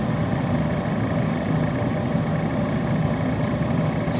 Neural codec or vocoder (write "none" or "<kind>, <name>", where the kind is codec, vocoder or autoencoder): none